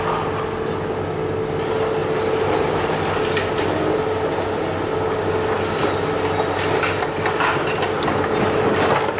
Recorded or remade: recorded